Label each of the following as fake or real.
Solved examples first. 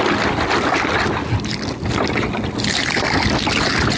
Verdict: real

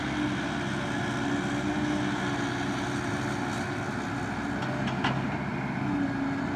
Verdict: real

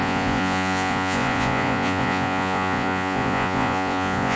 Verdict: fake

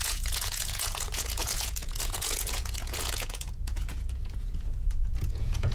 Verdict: fake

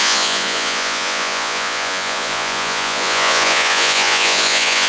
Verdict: fake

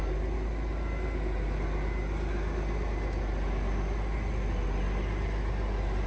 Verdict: real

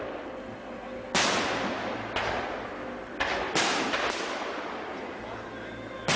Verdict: real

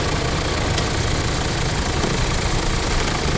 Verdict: real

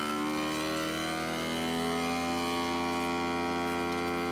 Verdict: real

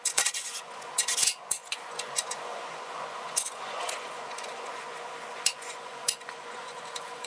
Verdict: fake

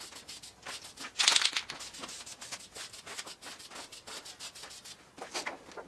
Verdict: real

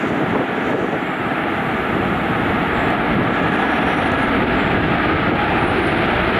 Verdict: real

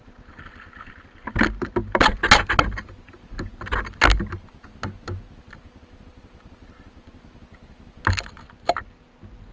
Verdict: real